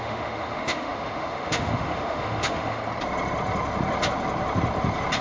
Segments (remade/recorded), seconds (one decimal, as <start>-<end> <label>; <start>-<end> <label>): 0.0-2.8 remade; 2.8-5.2 recorded

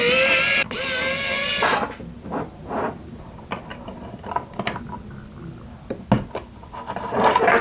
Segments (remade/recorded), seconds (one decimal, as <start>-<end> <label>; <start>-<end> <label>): 0.0-7.6 recorded

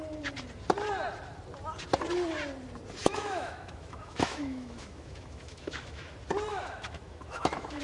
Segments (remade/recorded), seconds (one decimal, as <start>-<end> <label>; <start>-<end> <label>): 0.0-3.0 recorded; 3.0-6.1 remade; 6.1-6.5 recorded; 6.5-7.8 remade

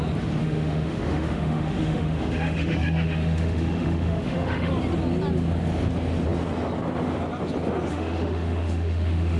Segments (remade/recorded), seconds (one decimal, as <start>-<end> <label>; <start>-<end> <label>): 0.0-0.4 recorded; 0.4-4.7 remade; 4.7-7.9 recorded; 7.9-9.4 remade